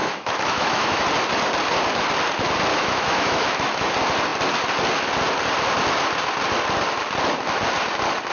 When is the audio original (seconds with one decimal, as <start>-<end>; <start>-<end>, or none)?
1.0-2.7; 3.9-8.3